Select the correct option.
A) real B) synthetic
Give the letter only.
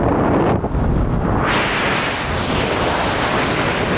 A